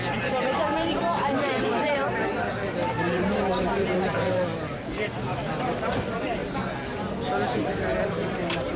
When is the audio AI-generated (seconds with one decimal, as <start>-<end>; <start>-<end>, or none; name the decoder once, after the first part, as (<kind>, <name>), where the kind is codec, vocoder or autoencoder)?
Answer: 0.0-2.0 (vocoder, BigVGAN v2); 2.9-4.5; 5.2-6.4; 7.9-8.8